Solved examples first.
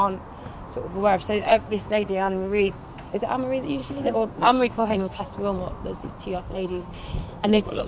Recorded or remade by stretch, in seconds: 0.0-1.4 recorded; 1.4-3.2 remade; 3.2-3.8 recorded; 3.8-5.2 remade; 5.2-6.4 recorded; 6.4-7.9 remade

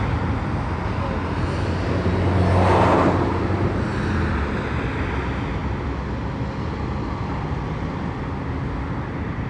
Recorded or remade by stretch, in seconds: 0.0-9.5 recorded